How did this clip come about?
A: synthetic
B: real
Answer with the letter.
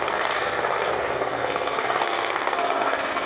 A